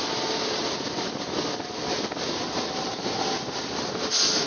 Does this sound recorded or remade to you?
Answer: recorded